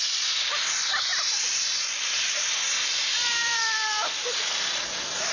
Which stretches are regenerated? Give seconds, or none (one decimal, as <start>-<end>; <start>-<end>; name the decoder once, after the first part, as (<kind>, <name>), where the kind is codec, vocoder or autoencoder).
none